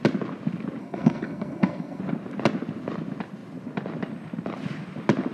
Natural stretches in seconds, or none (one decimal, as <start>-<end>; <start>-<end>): 0.0-0.8; 2.0-5.3